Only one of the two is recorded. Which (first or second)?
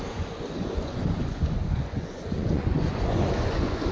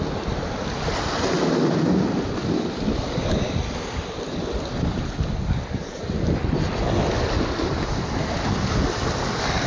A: second